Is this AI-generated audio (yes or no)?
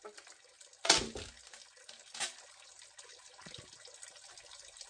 no